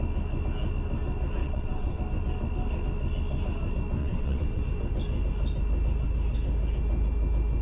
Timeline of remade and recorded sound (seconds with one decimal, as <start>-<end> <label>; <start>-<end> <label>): 0.0-1.4 recorded; 1.4-2.0 remade; 2.0-4.0 recorded; 4.0-4.6 remade; 4.6-7.6 recorded